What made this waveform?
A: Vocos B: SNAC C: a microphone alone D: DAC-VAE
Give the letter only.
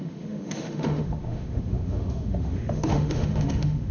D